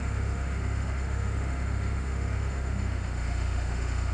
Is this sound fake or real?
fake